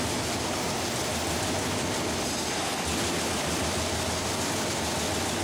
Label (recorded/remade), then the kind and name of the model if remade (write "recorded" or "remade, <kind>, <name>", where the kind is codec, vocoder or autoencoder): recorded